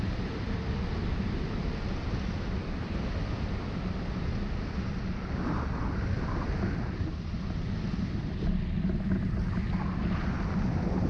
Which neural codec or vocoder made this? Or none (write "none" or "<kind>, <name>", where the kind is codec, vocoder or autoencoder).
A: none